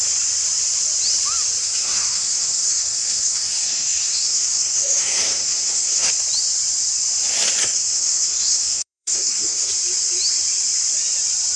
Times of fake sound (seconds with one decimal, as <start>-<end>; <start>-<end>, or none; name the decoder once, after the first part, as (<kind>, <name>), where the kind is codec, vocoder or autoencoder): 1.6-6.1 (codec, SNAC); 7.6-9.7